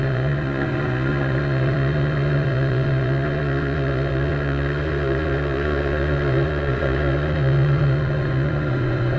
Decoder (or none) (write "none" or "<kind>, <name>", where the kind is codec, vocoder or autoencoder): vocoder, Vocos